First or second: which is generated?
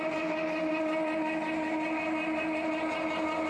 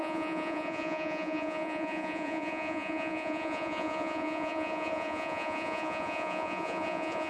second